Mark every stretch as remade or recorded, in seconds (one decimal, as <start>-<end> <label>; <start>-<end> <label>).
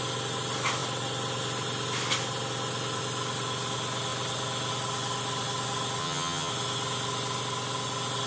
0.0-6.0 recorded; 6.0-6.5 remade; 6.5-8.3 recorded